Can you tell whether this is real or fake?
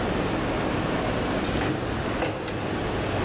real